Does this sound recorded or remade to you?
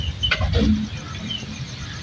recorded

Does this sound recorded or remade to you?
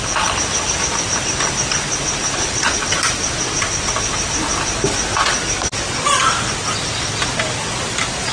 recorded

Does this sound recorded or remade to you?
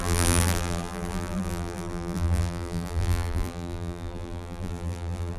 remade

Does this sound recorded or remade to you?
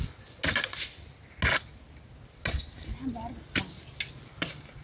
recorded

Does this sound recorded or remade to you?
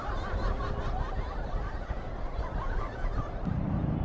recorded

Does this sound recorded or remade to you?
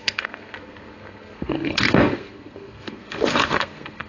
remade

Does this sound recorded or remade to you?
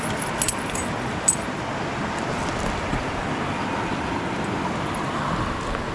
recorded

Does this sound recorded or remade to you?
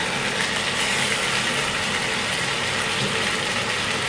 recorded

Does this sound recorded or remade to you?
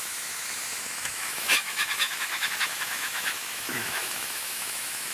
remade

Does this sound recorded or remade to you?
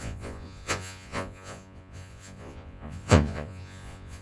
remade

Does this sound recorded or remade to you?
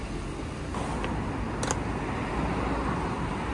recorded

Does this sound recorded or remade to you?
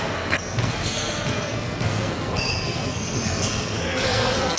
remade